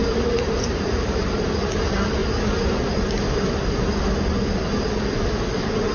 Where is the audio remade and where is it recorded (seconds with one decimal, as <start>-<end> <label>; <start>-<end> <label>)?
0.0-1.5 remade; 1.5-5.9 recorded